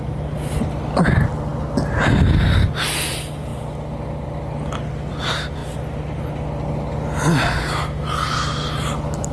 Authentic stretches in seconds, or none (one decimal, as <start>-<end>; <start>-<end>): 0.0-9.3